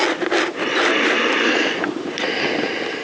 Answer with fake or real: real